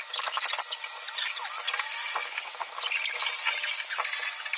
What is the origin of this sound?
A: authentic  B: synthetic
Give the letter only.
A